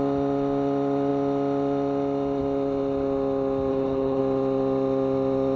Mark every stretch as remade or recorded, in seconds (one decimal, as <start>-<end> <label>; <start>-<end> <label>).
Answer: 0.0-3.7 recorded; 3.7-4.2 remade; 4.2-5.6 recorded